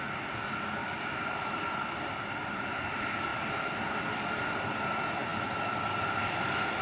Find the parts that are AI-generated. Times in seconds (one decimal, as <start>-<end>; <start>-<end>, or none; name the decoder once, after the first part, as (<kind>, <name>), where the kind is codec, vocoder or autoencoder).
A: 0.8-2.5 (vocoder, BigVGAN v2)